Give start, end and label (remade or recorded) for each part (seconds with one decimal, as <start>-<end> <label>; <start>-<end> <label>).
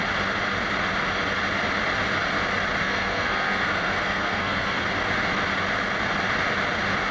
0.0-2.8 recorded; 2.8-4.8 remade; 4.8-7.1 recorded